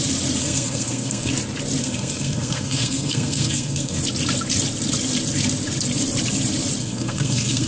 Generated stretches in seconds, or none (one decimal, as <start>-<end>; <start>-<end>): 0.4-1.3; 1.8-4.0; 6.8-7.7